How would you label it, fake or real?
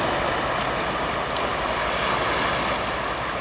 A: real